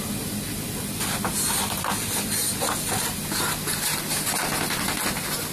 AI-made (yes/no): no